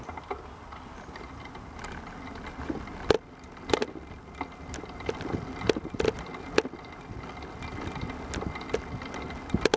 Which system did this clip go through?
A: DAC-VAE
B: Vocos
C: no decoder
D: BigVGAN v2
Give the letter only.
C